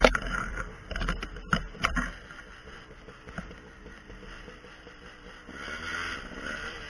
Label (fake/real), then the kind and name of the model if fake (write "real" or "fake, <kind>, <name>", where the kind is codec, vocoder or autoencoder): fake, vocoder, BigVGAN v2